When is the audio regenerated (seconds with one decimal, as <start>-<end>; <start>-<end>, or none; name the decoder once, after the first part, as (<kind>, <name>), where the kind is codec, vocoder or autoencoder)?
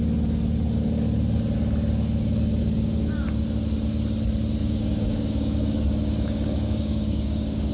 2.6-3.3 (codec, DAC); 4.6-7.7